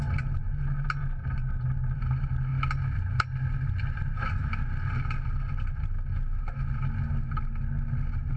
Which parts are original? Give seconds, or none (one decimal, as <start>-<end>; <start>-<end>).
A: 0.0-8.4